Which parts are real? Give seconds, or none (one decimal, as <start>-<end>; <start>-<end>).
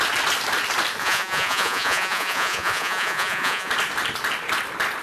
0.0-1.0; 3.7-5.0